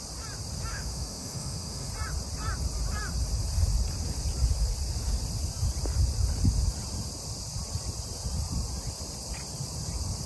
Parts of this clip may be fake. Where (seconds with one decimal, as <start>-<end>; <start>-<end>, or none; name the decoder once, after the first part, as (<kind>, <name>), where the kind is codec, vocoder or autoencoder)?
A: 0.7-1.9 (autoencoder, DAC-VAE)